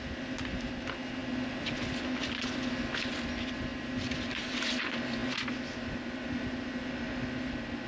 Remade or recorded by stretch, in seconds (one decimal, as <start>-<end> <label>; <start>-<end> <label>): 0.0-7.9 recorded